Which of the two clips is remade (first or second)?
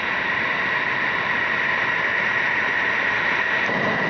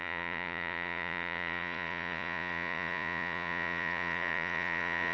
second